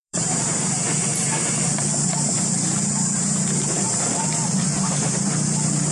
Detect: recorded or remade remade